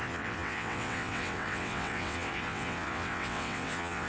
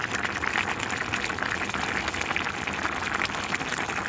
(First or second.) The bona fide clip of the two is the second